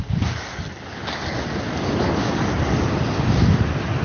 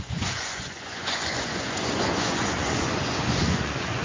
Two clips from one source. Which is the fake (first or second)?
second